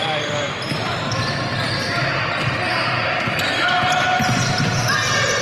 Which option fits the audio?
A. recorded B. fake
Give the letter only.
A